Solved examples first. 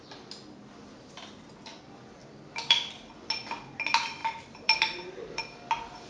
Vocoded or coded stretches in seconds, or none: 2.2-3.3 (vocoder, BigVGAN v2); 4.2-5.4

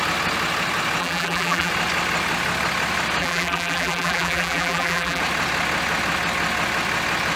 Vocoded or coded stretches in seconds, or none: 1.0-1.7 (vocoder, BigVGAN v2); 3.2-5.2

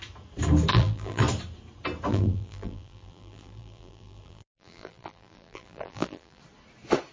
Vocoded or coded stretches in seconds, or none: 0.7-1.2 (vocoder, BigVGAN v2); 2.1-6.4

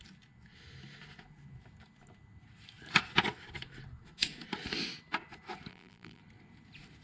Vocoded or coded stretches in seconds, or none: 5.7-6.2 (vocoder, BigVGAN v2)

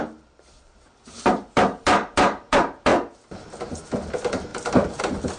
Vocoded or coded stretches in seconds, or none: 0.0-2.9 (vocoder, BigVGAN v2); 4.1-5.4

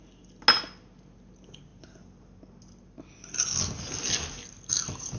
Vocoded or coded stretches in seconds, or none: none

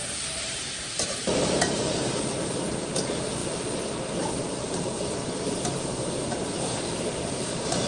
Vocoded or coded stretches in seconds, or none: 0.0-3.4 (vocoder, BigVGAN v2); 4.3-5.2; 5.9-6.4; 6.9-7.9

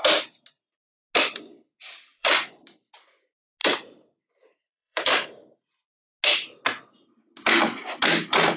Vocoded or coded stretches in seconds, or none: 2.1-2.9 (vocoder, BigVGAN v2); 3.6-5.5